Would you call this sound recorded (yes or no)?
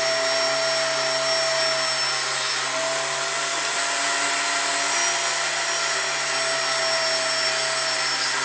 yes